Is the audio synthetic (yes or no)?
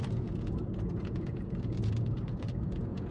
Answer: yes